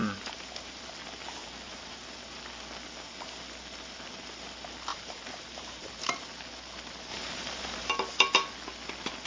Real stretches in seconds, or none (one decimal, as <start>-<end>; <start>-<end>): 0.8-1.4; 2.1-4.9; 5.9-7.1; 7.9-9.3